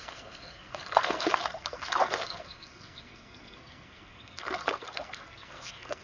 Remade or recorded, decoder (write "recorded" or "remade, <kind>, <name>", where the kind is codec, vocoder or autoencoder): remade, codec, SNAC